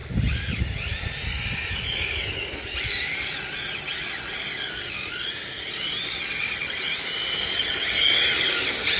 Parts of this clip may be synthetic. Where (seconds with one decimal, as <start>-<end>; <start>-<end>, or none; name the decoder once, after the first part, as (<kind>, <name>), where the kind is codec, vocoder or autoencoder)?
none